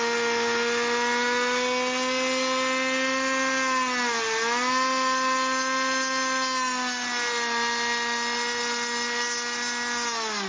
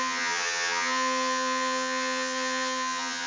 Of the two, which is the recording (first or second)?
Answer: first